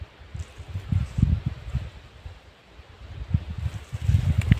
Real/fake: real